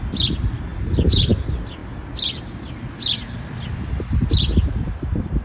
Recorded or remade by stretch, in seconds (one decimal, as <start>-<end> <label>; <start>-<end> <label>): 0.0-0.7 recorded; 0.7-1.4 remade; 1.4-5.4 recorded